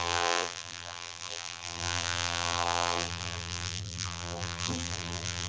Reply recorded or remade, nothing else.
remade